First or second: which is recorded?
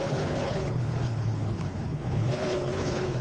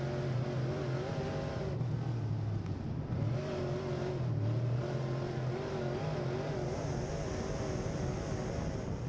second